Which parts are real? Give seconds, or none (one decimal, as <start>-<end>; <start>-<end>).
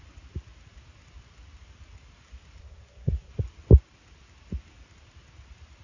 0.0-2.6; 3.3-5.8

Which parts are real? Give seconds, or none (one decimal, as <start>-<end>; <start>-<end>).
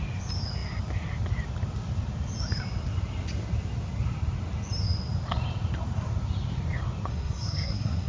0.0-7.1